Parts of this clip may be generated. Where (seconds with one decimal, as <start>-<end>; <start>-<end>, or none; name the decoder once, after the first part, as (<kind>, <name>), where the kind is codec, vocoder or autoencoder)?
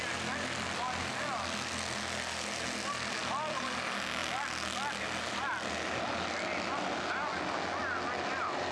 none